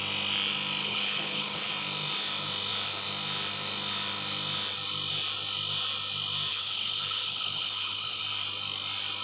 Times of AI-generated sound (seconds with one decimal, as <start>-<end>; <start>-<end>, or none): 0.8-1.7; 6.5-8.2